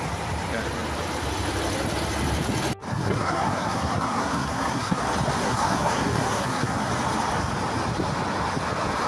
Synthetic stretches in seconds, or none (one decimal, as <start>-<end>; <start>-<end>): 2.9-5.0; 5.4-6.9